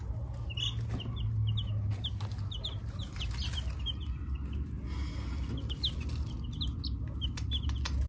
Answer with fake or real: real